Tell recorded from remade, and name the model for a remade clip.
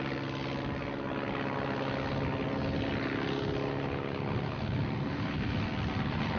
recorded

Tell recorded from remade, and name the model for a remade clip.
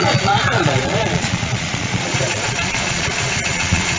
remade, vocoder, Vocos